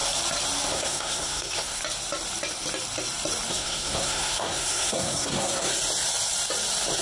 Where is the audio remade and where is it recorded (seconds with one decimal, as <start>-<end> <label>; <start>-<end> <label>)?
0.0-0.7 recorded; 0.7-1.8 remade; 1.8-3.5 recorded; 3.5-5.7 remade; 5.7-7.0 recorded